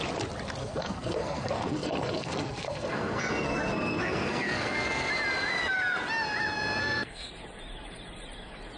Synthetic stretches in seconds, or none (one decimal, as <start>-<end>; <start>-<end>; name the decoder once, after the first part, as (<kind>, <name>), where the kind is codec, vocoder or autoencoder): 0.6-5.1 (codec, SNAC); 6.8-7.3